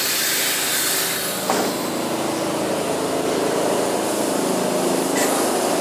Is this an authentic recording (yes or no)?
yes